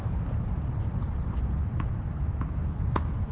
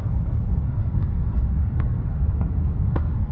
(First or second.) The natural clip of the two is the first